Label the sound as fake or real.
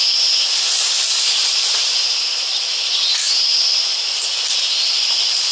real